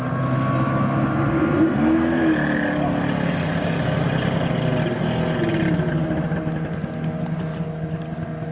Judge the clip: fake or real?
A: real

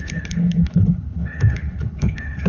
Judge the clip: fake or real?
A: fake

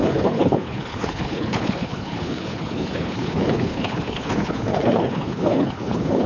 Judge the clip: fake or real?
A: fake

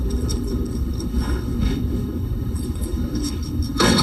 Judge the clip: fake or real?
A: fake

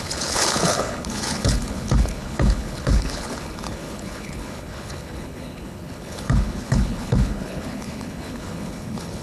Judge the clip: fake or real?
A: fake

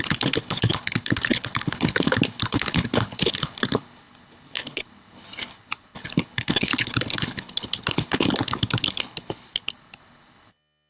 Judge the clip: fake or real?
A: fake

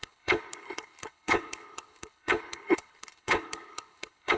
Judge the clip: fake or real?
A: fake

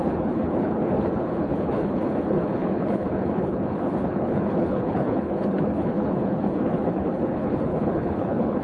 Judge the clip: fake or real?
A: fake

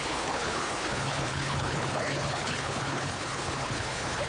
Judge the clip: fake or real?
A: fake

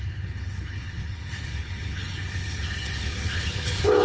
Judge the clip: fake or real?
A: fake